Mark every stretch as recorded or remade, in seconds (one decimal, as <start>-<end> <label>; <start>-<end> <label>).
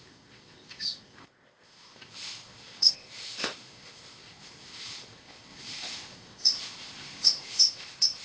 0.0-8.2 remade